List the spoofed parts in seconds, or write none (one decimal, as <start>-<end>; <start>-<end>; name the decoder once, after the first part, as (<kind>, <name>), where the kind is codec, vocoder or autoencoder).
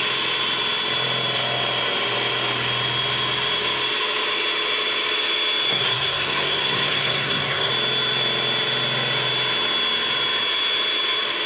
5.7-7.7 (codec, SNAC)